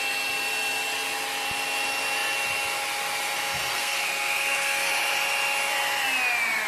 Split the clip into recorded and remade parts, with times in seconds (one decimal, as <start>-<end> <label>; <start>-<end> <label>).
0.0-3.7 recorded; 3.7-4.9 remade; 4.9-6.7 recorded